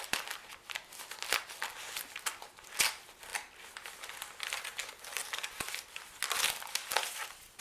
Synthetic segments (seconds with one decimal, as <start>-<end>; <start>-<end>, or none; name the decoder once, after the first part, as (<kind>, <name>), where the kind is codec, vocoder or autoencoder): none